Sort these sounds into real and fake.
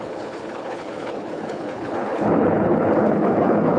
fake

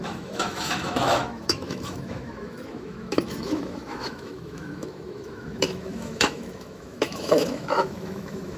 fake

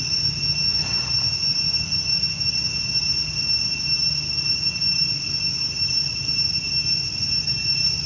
real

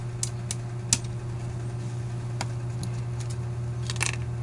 real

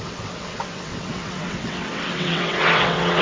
fake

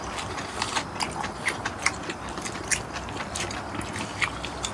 fake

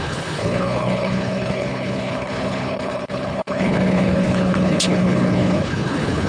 fake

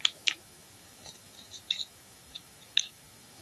fake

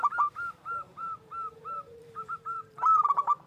fake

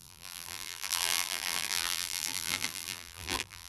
fake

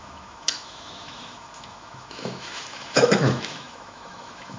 fake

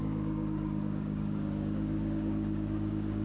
fake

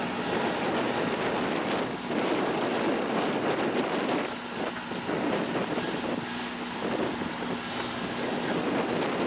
real